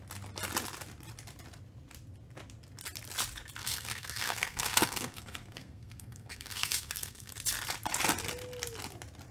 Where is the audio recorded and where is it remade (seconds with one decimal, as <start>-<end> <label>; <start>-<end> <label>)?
0.0-3.6 recorded; 3.6-7.3 remade; 7.3-9.3 recorded